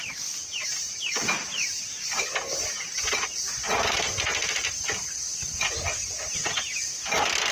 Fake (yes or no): no